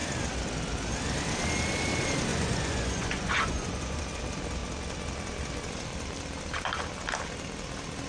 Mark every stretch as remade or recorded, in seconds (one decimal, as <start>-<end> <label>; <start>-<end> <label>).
0.0-2.3 recorded; 2.3-4.0 remade; 4.0-8.1 recorded